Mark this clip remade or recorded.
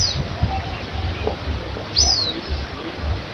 recorded